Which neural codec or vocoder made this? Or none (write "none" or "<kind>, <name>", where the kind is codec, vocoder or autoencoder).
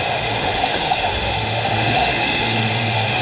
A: autoencoder, DAC-VAE